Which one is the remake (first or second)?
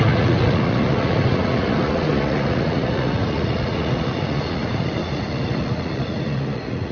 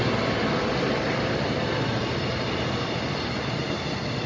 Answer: first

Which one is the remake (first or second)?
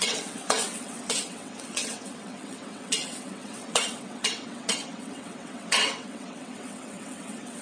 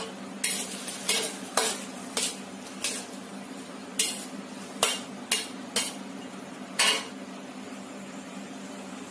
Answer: first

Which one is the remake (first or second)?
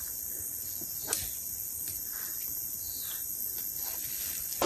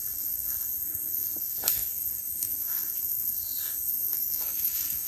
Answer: second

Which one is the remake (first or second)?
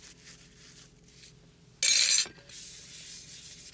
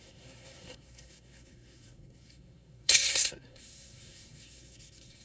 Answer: second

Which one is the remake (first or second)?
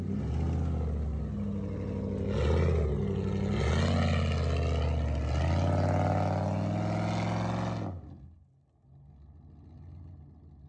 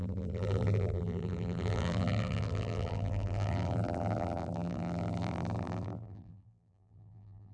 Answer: second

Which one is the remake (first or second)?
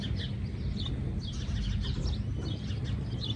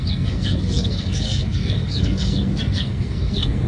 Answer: second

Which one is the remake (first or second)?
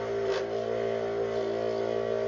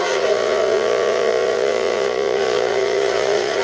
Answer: second